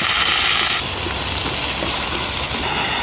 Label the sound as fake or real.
real